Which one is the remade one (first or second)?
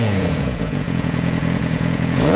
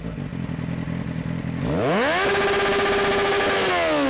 first